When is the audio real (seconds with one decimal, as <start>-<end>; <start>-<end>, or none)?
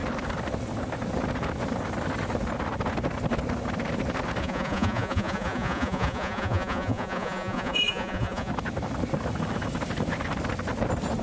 0.0-4.4; 8.5-11.2